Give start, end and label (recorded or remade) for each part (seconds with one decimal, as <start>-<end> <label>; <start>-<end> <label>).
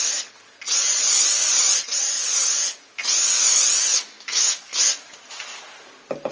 0.0-3.8 recorded; 3.8-4.7 remade; 4.7-6.3 recorded